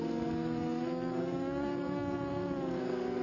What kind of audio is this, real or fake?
fake